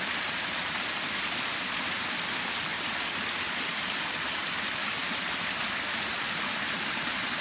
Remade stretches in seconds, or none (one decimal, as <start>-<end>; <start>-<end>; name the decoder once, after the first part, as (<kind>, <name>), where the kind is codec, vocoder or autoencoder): 0.0-5.0 (vocoder, BigVGAN v2); 6.1-7.4